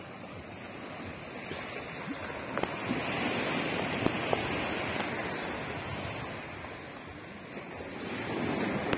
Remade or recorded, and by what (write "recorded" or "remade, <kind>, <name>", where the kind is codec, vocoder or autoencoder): recorded